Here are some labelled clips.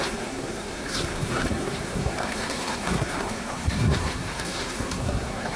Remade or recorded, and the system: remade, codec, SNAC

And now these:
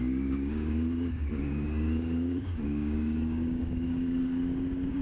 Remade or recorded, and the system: remade, codec, DAC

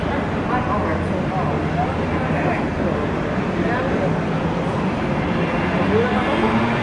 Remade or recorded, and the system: recorded